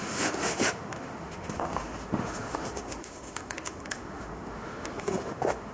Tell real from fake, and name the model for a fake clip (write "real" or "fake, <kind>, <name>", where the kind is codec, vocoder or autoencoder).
fake, autoencoder, DAC-VAE